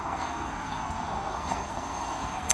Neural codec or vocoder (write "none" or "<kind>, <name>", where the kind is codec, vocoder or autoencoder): codec, SNAC